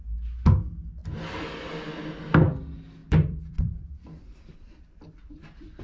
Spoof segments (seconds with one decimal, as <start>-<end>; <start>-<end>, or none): 1.0-1.8; 3.0-5.8